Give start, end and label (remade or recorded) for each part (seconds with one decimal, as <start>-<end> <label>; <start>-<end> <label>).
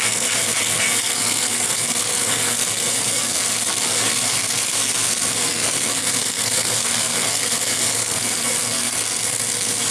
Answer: 0.0-9.9 remade